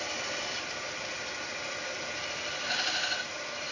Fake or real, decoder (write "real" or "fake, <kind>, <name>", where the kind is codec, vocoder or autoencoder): real